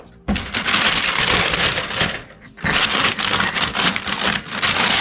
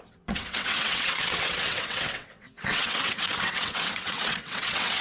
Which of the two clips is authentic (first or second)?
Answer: first